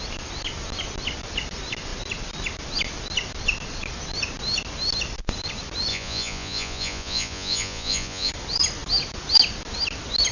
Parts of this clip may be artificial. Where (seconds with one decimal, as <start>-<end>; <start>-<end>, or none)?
5.9-8.3